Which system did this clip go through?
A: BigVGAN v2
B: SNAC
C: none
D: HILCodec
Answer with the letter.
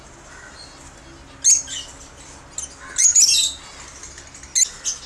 C